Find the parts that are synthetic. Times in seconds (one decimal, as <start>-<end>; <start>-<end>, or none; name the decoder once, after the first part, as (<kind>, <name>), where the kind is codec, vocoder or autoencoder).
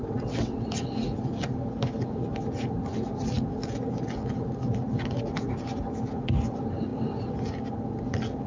0.0-0.7 (vocoder, WaveNeXt)